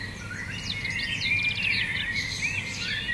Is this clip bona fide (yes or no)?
yes